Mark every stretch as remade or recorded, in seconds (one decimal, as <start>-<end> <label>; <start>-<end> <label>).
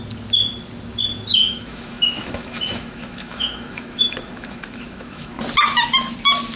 0.0-1.4 recorded; 1.4-5.4 remade; 5.4-6.6 recorded